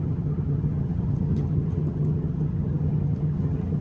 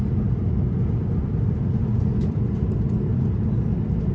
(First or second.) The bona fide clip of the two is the second